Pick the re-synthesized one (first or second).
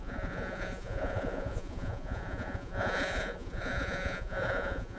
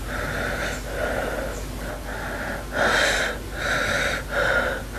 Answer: first